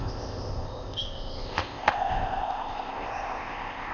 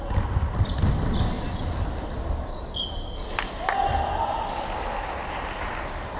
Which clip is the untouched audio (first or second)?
second